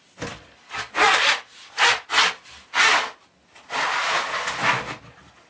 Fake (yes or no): no